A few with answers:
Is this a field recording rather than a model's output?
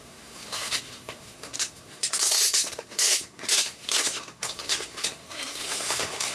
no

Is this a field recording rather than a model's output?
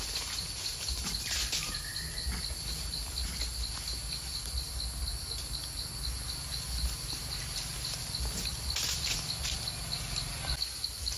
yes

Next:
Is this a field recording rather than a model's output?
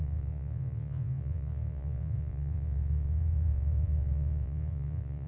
no